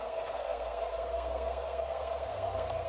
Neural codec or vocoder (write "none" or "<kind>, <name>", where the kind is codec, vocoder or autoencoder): codec, SNAC